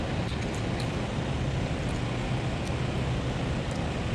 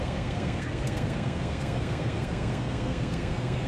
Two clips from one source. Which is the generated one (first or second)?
second